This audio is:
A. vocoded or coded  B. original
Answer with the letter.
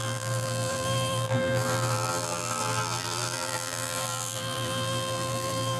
A